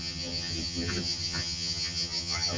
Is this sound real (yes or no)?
no